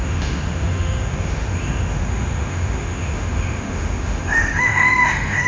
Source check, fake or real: fake